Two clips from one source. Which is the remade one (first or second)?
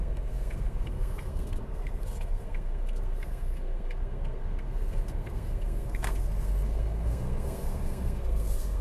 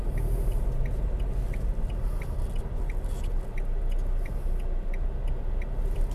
first